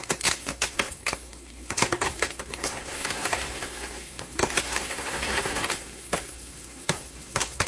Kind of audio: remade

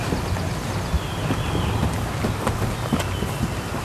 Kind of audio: recorded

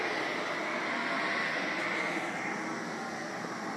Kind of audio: recorded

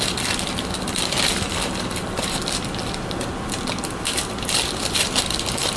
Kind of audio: remade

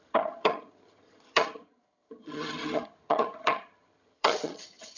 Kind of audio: remade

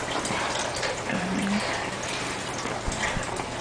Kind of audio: remade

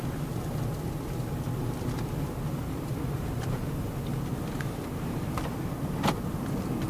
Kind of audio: recorded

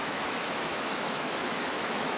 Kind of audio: remade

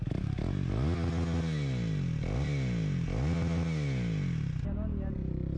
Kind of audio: recorded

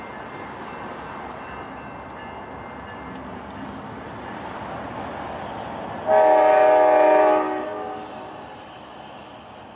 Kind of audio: recorded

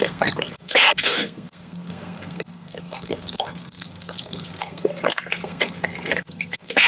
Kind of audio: remade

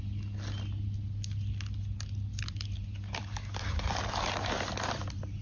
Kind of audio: recorded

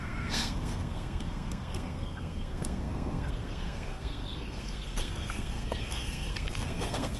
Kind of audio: remade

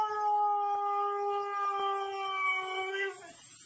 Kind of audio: recorded